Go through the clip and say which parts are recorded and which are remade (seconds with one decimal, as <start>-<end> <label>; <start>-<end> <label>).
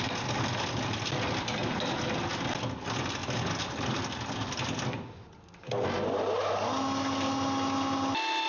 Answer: 0.0-8.5 recorded